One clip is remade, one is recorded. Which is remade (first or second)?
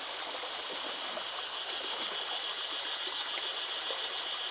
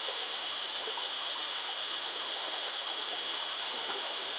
second